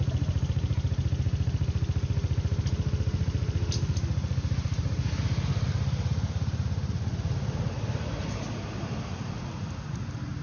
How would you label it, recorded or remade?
recorded